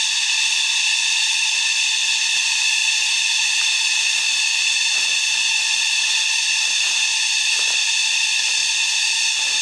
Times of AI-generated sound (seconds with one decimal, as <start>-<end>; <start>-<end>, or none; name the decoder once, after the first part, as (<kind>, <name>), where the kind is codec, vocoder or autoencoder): 0.0-2.8 (vocoder, BigVGAN v2); 5.6-8.6